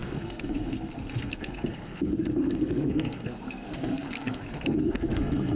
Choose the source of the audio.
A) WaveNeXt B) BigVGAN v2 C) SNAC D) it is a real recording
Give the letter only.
C